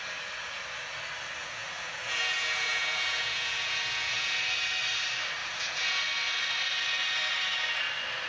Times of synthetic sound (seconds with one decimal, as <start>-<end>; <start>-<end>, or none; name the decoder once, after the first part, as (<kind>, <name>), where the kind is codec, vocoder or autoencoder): 1.4-4.4 (vocoder, Vocos); 5.4-6.0